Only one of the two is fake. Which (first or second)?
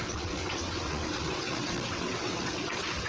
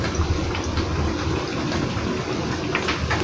first